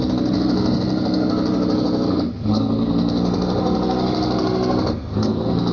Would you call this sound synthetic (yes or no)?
yes